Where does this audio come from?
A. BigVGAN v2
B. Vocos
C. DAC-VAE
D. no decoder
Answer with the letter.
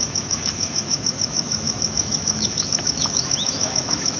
C